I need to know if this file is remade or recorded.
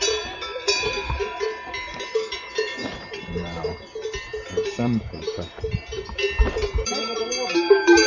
remade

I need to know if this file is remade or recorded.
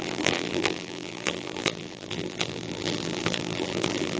remade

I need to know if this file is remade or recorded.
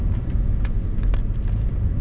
recorded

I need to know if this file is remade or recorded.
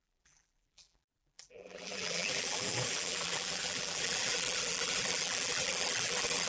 remade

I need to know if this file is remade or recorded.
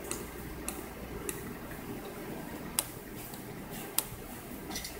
recorded